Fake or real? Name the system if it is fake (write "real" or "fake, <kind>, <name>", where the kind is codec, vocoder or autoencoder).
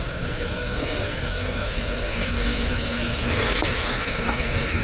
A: fake, codec, SNAC